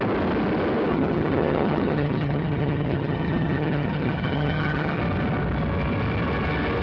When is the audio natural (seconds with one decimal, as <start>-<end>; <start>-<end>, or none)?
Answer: 0.0-0.9; 5.0-6.8